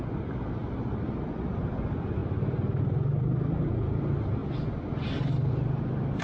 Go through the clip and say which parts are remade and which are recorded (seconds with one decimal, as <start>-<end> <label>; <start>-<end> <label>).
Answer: 0.0-6.2 recorded